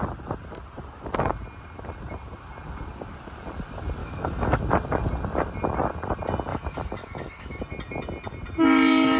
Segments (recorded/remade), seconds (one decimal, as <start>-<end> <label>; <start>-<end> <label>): 0.0-4.0 recorded; 4.0-4.6 remade; 4.6-6.5 recorded; 6.5-7.6 remade; 7.6-9.2 recorded